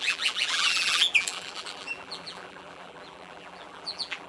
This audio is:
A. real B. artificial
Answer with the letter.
B